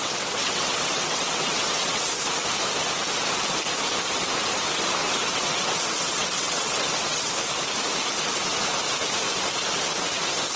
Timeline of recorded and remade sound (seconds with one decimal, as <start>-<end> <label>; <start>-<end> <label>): 0.0-2.1 remade; 2.1-5.0 recorded; 5.0-7.3 remade; 7.3-10.6 recorded